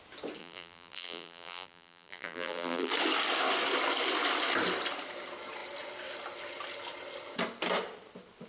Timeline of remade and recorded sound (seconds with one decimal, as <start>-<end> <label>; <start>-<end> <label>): 0.0-0.4 recorded; 0.4-2.9 remade; 2.9-8.5 recorded